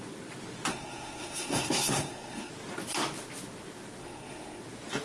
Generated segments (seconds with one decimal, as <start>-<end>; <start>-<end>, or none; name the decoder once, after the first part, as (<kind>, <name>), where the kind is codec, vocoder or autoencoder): 0.7-2.5 (codec, SNAC); 4.0-4.6